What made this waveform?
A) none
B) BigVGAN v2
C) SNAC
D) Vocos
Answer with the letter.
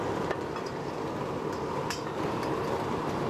A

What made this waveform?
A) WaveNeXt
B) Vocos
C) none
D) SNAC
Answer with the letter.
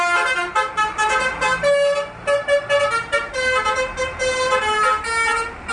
C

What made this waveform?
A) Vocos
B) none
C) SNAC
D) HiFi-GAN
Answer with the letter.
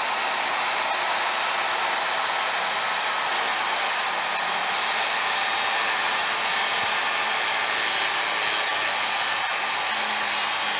B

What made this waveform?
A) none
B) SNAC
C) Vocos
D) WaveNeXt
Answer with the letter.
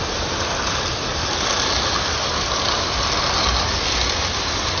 A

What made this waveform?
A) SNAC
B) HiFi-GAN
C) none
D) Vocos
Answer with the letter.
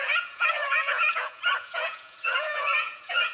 D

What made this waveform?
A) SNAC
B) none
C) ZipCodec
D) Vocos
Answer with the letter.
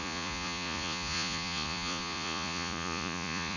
D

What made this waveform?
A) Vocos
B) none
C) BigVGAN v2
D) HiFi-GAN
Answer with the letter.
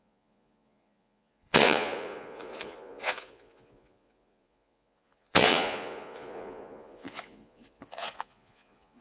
A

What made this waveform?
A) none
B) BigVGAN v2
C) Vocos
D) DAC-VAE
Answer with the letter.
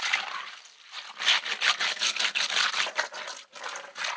A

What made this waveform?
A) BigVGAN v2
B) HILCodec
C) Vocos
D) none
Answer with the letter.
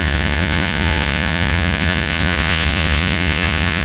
C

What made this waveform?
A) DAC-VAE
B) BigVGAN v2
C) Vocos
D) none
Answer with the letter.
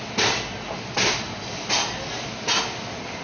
D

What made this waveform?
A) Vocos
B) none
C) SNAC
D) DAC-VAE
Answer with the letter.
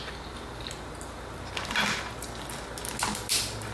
B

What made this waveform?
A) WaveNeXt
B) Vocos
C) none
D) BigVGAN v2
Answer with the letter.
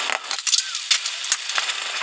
C